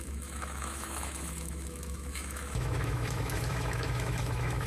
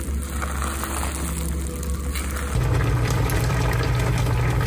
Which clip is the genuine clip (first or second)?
second